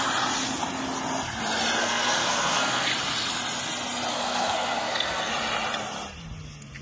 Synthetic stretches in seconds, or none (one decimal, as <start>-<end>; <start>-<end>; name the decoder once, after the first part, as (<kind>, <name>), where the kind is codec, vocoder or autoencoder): 1.8-2.9 (codec, SNAC); 4.1-5.3